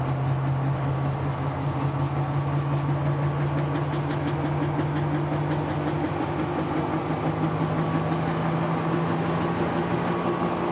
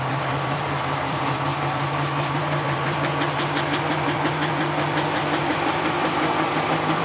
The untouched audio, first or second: first